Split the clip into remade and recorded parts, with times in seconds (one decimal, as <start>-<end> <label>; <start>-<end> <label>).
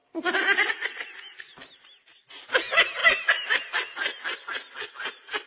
0.0-5.5 recorded